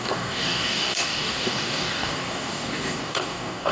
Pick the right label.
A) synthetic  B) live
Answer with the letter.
A